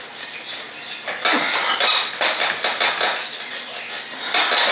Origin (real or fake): real